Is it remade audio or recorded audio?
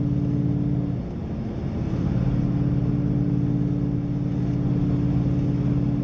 recorded